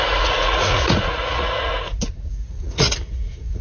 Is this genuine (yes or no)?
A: no